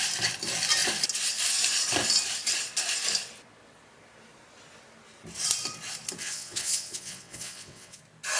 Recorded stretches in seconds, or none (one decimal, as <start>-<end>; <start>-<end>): 0.0-6.2; 8.0-8.4